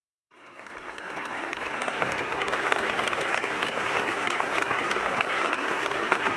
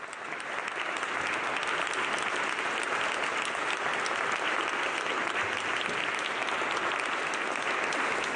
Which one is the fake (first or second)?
first